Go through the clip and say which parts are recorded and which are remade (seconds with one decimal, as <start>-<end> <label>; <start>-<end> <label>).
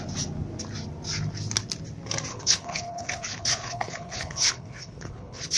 0.0-2.3 recorded; 2.3-5.6 remade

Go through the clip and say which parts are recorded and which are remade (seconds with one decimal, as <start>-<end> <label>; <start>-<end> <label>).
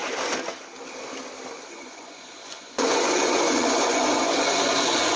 0.0-1.5 recorded; 1.5-5.2 remade